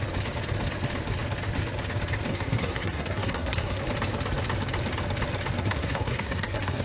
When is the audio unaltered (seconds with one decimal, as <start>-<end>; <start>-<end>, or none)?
0.0-2.3; 3.8-5.6